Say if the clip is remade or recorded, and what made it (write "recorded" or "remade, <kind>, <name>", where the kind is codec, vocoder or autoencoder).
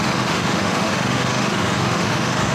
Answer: remade, autoencoder, DAC-VAE